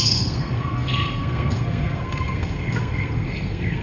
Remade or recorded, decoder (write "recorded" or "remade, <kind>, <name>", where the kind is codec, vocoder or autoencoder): remade, codec, SNAC